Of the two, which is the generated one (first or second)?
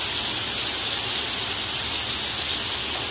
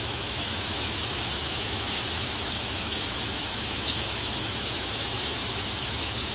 second